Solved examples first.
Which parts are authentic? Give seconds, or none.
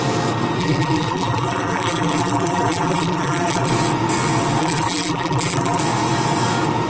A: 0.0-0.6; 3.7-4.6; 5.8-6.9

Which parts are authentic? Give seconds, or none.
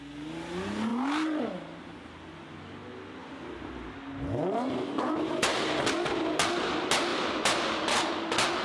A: 0.0-7.1; 8.1-8.6